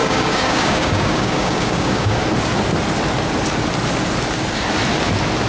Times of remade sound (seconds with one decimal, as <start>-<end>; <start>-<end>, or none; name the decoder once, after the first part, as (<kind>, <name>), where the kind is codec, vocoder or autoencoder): 0.0-2.2 (codec, DAC)